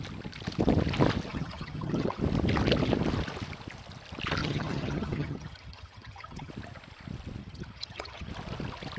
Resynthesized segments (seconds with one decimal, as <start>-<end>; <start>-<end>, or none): 1.3-2.2; 4.4-6.5; 7.4-8.3